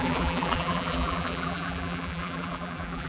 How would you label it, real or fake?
fake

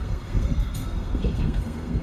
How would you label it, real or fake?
fake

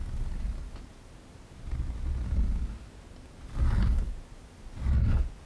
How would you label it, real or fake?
real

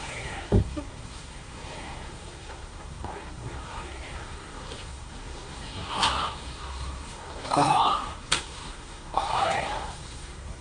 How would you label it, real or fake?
fake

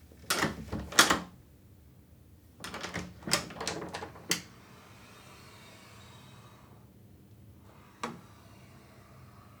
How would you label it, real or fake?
real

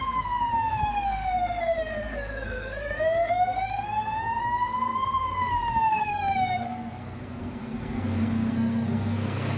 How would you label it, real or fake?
fake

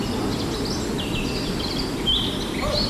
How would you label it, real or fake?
real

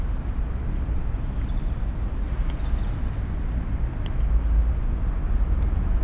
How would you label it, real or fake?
real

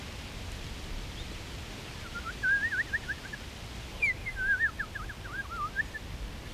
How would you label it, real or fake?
real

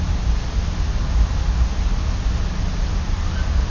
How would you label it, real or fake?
real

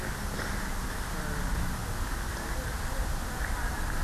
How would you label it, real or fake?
real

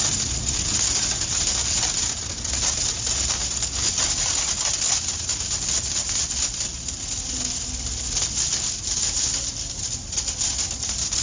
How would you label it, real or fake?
real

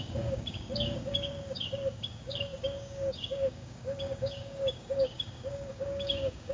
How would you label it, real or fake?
fake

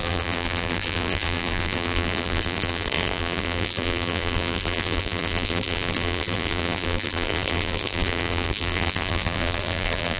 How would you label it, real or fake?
fake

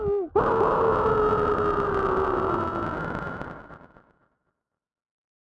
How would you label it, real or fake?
real